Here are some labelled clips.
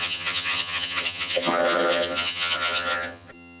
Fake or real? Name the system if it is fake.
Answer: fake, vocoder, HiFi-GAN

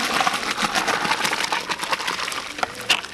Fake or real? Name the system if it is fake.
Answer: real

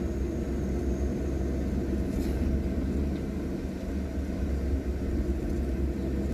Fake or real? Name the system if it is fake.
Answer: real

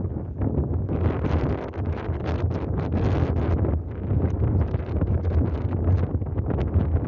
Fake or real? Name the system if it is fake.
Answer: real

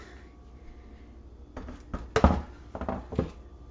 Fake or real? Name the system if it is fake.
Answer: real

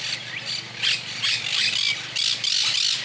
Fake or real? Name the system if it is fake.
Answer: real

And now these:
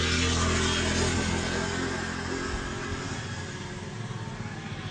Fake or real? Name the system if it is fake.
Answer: real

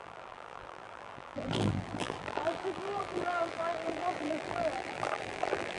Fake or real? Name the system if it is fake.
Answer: fake, vocoder, BigVGAN v2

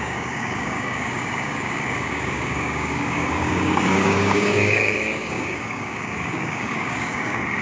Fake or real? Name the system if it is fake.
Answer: fake, codec, DAC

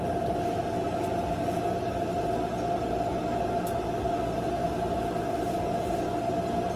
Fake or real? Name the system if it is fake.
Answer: real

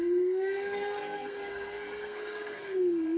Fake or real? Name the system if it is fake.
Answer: fake, codec, SNAC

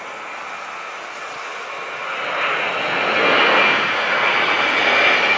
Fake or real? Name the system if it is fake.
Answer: real